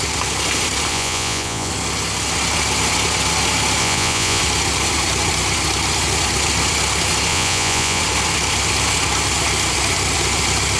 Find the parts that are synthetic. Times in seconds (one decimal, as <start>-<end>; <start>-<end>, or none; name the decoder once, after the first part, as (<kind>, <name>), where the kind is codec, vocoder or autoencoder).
0.9-1.7 (vocoder, Vocos); 3.8-4.4; 7.3-8.0